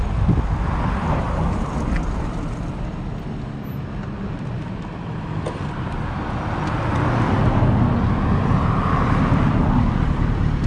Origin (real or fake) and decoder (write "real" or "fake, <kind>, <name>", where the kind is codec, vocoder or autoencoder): real